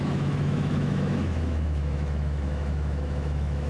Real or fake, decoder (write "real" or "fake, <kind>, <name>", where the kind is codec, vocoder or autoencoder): fake, autoencoder, DAC-VAE